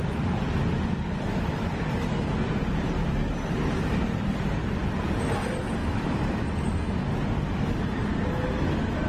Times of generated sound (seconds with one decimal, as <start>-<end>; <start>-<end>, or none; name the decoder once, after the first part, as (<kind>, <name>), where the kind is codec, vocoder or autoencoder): 5.8-7.1 (autoencoder, DAC-VAE)